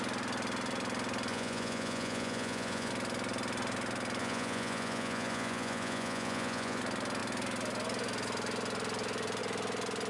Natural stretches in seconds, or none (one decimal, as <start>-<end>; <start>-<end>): 0.0-1.3; 2.9-4.2; 6.8-10.1